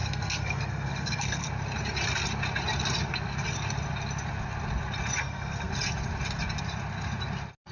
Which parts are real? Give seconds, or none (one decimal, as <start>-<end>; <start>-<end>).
1.5-5.2; 5.7-7.7